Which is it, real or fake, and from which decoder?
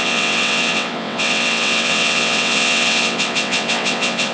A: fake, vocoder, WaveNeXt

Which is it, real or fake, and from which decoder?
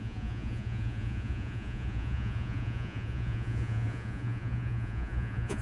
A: fake, vocoder, Vocos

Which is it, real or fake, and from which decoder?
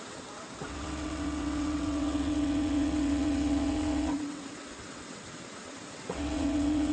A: fake, vocoder, WaveNeXt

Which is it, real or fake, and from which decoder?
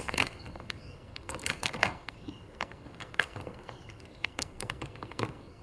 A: fake, codec, SNAC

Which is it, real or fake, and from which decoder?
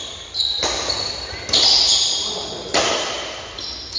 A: real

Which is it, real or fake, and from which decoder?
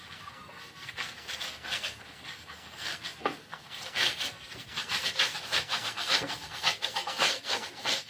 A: fake, codec, SNAC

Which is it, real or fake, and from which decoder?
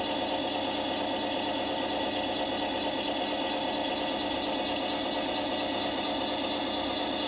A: real